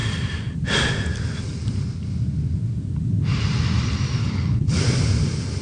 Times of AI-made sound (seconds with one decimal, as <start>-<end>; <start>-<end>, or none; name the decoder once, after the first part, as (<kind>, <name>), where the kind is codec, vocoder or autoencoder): 4.2-4.8 (codec, HILCodec)